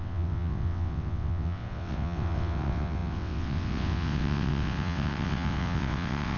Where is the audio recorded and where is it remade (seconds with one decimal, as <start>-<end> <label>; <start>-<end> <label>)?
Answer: 0.0-6.4 remade